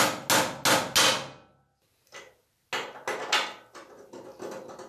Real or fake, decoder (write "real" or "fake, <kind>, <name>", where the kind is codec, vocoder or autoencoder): real